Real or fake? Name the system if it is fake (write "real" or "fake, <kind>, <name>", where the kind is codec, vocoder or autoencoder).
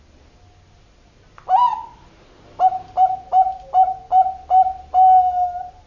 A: real